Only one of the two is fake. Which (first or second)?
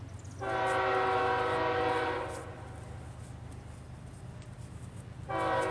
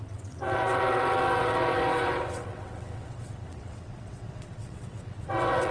second